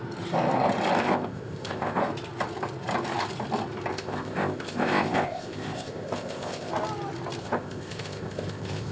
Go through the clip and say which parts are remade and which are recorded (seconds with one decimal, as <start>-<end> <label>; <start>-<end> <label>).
0.0-1.0 recorded; 1.0-2.0 remade; 2.0-3.9 recorded; 3.9-6.7 remade; 6.7-7.4 recorded; 7.4-8.9 remade